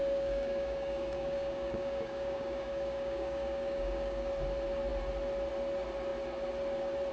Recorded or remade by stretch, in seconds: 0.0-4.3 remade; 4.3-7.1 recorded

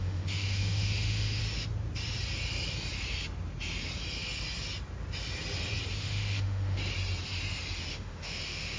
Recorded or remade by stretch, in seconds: 0.0-1.4 remade; 1.4-6.0 recorded; 6.0-6.8 remade; 6.8-7.9 recorded; 7.9-8.8 remade